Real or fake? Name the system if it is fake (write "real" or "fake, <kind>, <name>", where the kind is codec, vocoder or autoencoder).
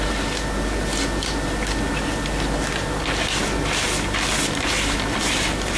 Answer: real